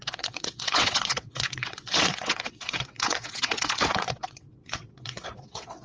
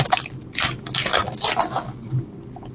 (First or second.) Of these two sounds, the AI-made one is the first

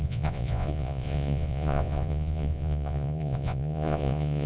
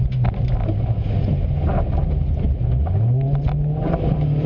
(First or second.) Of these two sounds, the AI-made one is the first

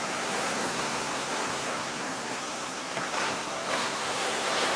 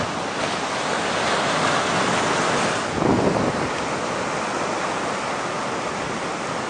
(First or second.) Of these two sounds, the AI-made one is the first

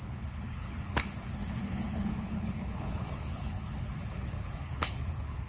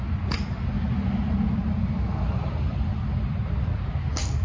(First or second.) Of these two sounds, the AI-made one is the first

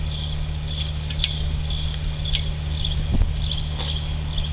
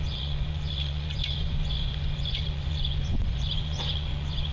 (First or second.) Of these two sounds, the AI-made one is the second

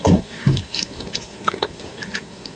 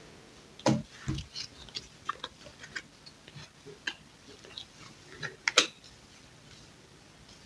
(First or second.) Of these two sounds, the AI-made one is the first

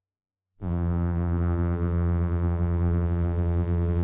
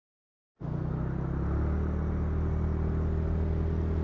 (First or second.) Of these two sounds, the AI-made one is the first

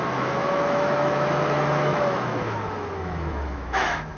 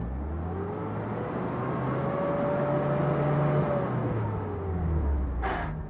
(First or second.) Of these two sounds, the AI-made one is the first